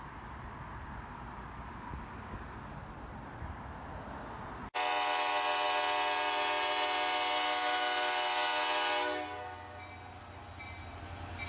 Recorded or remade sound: recorded